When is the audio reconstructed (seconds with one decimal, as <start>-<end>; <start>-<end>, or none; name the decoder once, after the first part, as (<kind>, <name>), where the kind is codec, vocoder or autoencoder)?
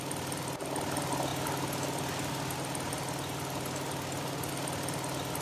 none